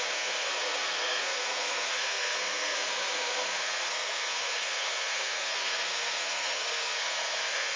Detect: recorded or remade remade